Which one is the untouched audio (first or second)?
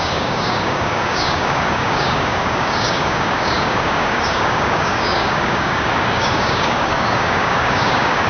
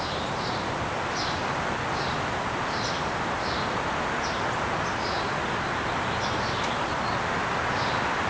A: second